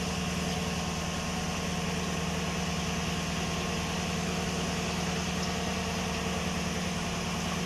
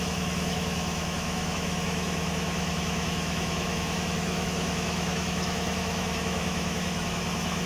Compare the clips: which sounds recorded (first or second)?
first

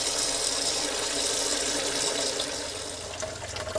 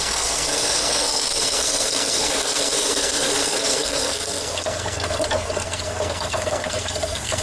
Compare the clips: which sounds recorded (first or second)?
first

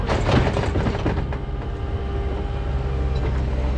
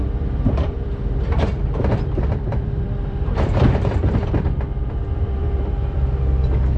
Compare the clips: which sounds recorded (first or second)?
first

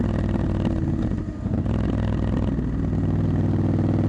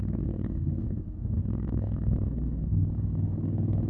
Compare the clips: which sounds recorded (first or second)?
first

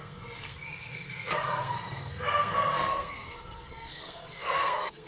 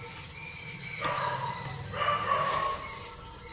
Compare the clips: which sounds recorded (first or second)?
second